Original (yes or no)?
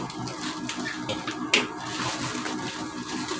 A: yes